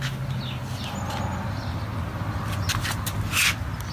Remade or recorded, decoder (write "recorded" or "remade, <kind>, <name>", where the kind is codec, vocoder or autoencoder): recorded